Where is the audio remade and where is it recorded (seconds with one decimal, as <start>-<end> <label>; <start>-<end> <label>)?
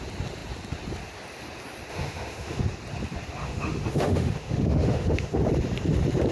0.0-1.9 recorded; 1.9-2.6 remade; 2.6-3.4 recorded; 3.4-5.4 remade; 5.4-6.3 recorded